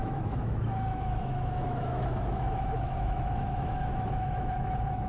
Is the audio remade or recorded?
remade